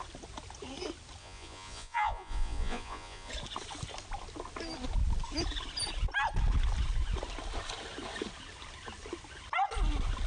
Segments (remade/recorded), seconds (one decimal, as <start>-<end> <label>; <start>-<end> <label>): 0.0-1.2 recorded; 1.2-3.3 remade; 3.3-10.3 recorded

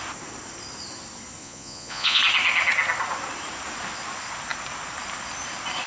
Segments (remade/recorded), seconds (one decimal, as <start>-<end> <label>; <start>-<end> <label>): 0.0-1.4 recorded; 1.4-2.2 remade; 2.2-5.9 recorded

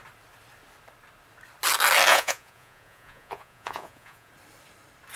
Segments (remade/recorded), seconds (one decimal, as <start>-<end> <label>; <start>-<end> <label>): 0.0-2.1 recorded; 2.1-4.3 remade; 4.3-5.2 recorded

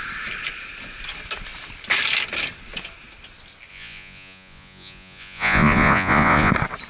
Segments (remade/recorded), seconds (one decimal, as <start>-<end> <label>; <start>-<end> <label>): 0.0-3.7 recorded; 3.7-6.5 remade; 6.5-6.9 recorded

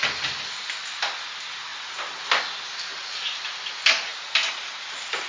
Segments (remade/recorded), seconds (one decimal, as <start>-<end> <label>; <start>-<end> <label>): 0.0-5.3 recorded

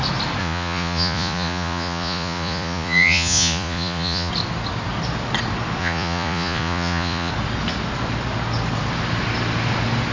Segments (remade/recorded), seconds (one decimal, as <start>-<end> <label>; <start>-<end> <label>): 0.0-0.4 recorded; 0.4-4.3 remade; 4.3-5.8 recorded; 5.8-7.3 remade; 7.3-10.1 recorded